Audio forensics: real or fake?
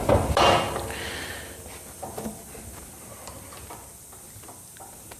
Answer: real